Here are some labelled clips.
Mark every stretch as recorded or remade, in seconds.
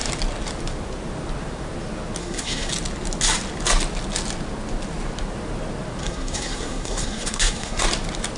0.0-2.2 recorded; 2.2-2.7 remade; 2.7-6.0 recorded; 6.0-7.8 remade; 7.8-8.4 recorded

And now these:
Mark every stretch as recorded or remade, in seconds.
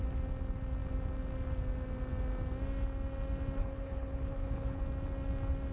0.0-3.6 recorded; 3.6-4.8 remade; 4.8-5.7 recorded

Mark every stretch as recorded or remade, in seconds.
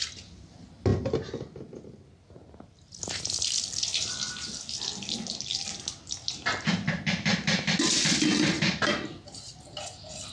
0.0-10.3 recorded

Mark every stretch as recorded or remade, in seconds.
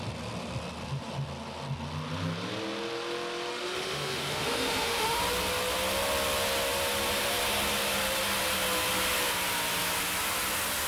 0.0-3.5 recorded; 3.5-5.2 remade; 5.2-10.9 recorded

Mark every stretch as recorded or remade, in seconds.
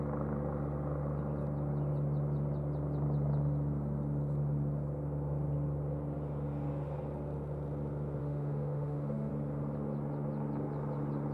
0.0-8.2 recorded; 8.2-9.3 remade; 9.3-11.3 recorded